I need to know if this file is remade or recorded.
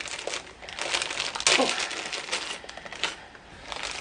recorded